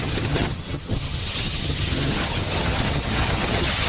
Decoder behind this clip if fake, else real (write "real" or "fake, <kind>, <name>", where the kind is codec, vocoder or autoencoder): fake, vocoder, HiFi-GAN